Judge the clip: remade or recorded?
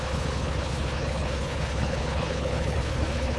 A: remade